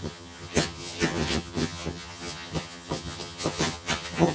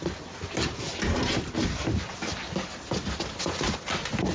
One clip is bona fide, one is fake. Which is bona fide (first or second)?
second